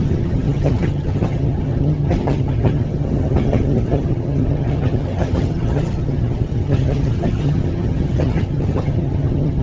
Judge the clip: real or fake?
fake